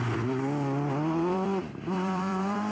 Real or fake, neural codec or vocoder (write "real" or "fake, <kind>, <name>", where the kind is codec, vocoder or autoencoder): fake, vocoder, BigVGAN v2